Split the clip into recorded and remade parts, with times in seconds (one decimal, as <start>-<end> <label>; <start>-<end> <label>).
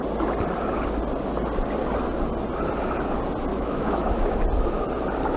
0.0-3.5 recorded; 3.5-4.4 remade; 4.4-5.4 recorded